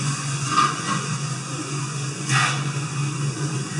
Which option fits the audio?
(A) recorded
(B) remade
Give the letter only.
B